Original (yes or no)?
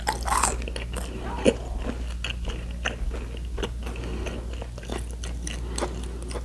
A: yes